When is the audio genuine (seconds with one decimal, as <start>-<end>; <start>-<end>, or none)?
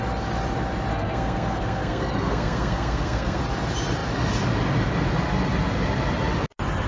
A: 0.0-0.9; 3.4-6.9